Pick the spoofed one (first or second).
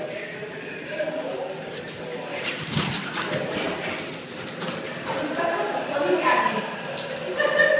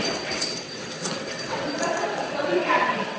second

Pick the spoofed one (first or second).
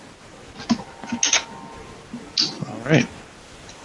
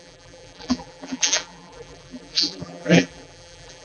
second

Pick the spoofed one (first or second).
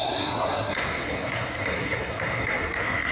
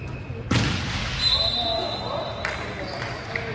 first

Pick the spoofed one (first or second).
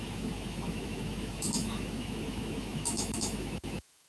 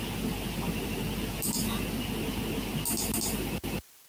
first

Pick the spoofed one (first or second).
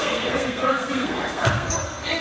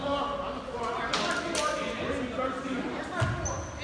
first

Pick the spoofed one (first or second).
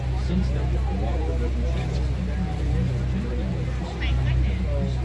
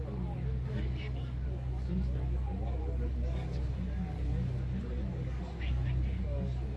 second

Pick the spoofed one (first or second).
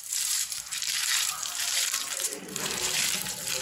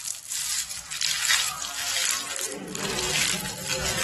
first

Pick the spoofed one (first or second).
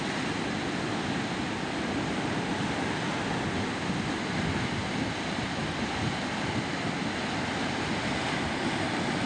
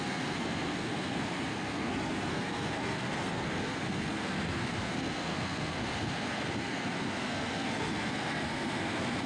second